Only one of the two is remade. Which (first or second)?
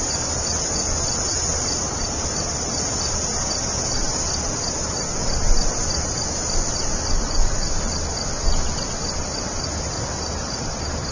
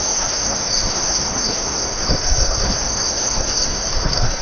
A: second